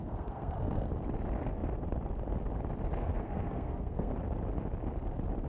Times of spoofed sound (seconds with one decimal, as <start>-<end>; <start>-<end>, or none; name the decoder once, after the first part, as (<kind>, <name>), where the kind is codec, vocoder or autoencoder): 0.0-0.9 (codec, SNAC); 3.0-4.1